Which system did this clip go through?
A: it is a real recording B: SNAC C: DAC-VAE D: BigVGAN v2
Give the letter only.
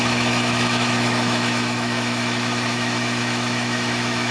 C